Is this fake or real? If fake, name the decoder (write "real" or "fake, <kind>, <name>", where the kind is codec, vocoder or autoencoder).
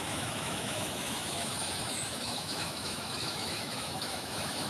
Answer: fake, autoencoder, DAC-VAE